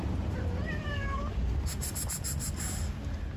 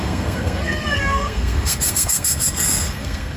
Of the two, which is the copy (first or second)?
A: second